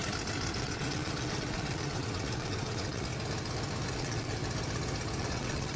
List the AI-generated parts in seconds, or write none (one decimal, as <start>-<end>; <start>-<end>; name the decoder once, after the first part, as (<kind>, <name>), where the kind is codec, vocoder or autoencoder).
0.6-3.1 (vocoder, WaveNeXt); 3.9-4.4; 5.2-5.8